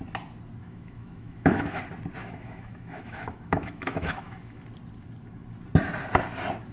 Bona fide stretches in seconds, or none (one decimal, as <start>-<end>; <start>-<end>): 0.0-0.6; 1.8-2.2; 4.6-6.7